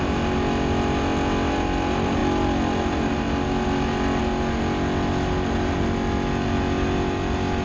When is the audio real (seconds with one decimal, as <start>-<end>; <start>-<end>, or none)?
0.0-7.6